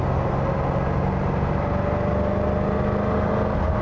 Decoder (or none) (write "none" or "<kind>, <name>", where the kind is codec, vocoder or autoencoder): none